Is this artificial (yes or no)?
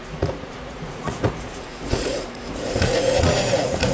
yes